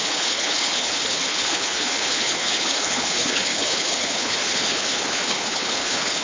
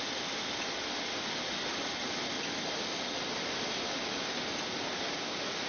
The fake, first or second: first